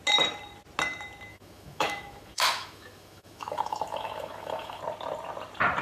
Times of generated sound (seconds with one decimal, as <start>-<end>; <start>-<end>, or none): 1.3-4.8